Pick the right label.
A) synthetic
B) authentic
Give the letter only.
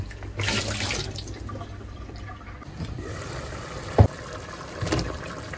B